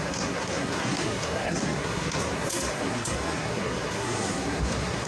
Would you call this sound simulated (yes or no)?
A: yes